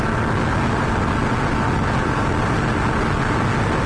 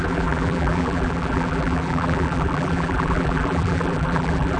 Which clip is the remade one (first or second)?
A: second